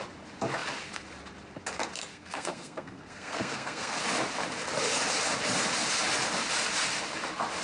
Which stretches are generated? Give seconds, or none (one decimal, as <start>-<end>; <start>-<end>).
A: 2.1-4.0